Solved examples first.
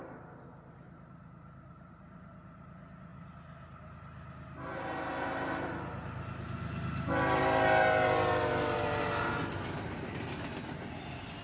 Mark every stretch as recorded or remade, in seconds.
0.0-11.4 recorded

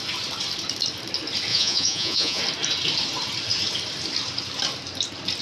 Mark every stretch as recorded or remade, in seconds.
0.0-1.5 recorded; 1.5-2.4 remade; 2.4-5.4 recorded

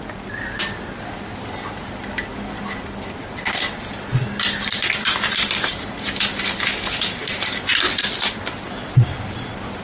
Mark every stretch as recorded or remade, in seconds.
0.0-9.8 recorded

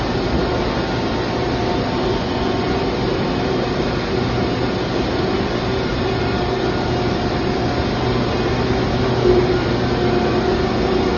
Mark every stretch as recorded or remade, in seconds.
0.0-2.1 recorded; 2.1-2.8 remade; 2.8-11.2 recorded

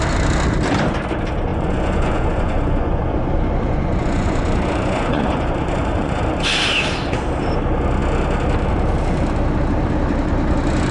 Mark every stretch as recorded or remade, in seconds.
0.0-1.5 recorded; 1.5-6.2 remade; 6.2-10.9 recorded

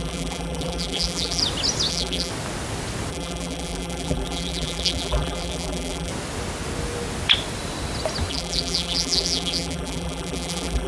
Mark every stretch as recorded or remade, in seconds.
0.0-1.4 remade; 1.4-1.9 recorded; 1.9-2.3 remade; 2.3-3.1 recorded; 3.1-6.1 remade; 6.1-8.3 recorded; 8.3-10.9 remade